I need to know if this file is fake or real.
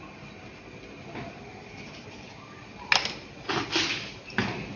real